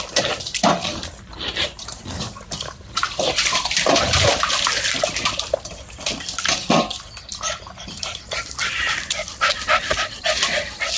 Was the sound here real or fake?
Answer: fake